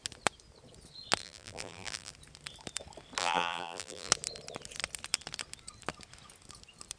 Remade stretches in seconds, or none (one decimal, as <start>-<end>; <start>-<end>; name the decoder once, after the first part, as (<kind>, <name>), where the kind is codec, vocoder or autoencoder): 1.2-2.1 (vocoder, BigVGAN v2); 3.2-4.1